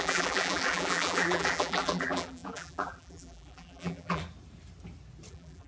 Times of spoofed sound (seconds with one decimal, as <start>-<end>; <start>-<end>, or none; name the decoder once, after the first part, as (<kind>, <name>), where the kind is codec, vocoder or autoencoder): 0.0-4.2 (vocoder, BigVGAN v2); 5.3-5.7